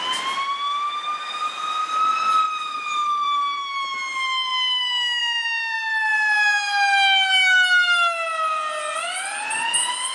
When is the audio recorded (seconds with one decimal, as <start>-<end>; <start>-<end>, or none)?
0.0-10.1